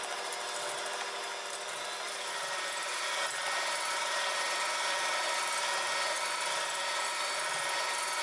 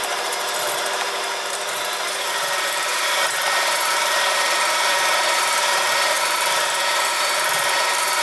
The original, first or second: first